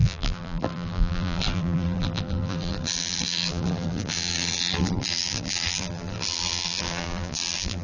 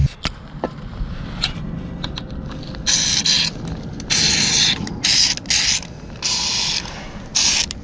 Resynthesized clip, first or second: first